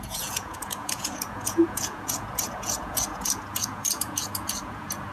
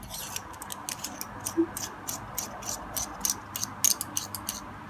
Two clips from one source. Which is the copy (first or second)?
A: first